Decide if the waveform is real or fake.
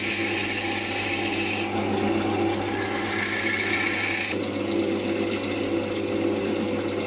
real